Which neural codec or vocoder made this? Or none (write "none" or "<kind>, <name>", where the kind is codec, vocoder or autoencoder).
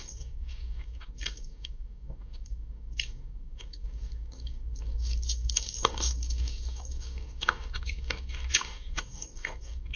codec, DAC